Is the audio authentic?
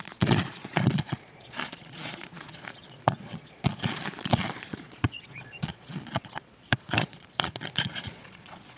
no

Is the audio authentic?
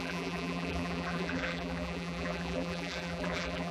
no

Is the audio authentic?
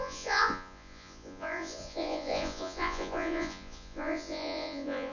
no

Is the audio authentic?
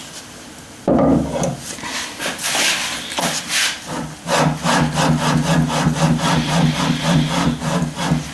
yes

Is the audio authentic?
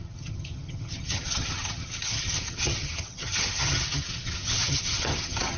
no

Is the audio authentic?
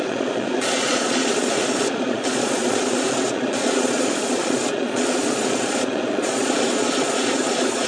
no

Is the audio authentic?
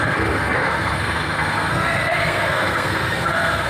no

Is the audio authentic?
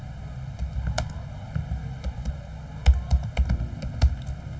yes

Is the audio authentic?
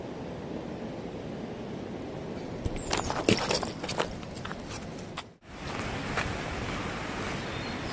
yes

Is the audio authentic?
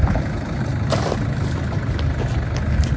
yes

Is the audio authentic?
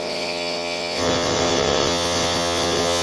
no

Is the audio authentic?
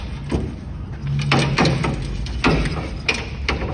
yes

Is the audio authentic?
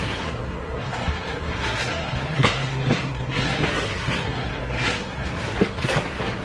no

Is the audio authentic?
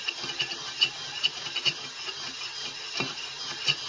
yes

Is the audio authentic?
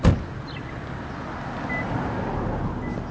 yes